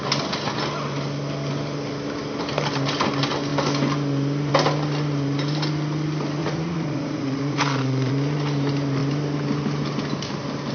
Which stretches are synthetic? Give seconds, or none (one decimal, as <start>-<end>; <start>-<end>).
6.4-8.1